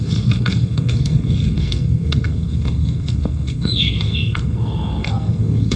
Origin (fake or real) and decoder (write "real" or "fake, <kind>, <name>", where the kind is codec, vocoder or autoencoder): fake, codec, SNAC